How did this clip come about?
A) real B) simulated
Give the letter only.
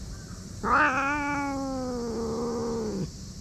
A